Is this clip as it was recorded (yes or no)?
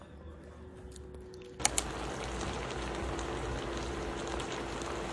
yes